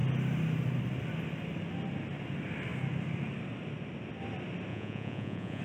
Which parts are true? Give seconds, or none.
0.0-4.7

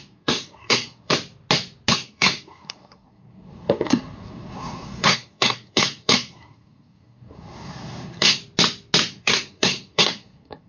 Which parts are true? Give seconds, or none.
1.1-1.9; 8.4-9.1